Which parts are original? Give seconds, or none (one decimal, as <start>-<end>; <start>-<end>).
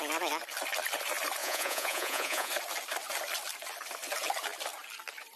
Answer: 0.0-1.4; 2.5-5.4